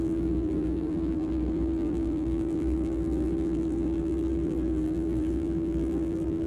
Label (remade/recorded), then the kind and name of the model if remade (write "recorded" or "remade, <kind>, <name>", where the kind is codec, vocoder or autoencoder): remade, vocoder, BigVGAN v2